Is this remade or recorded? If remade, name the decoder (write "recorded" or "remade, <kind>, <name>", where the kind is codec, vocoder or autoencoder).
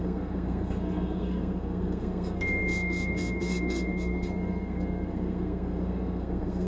remade, codec, SNAC